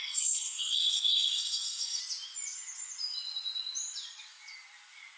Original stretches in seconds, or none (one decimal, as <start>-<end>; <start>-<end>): 2.0-5.2